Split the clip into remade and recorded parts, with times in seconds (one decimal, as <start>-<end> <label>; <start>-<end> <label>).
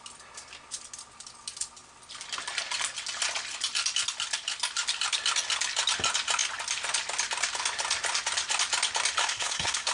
0.0-9.2 recorded; 9.2-9.9 remade